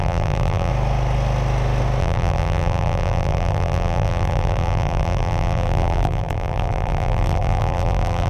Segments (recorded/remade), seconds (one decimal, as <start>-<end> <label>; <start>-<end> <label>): 0.0-0.7 remade; 0.7-2.0 recorded; 2.0-8.3 remade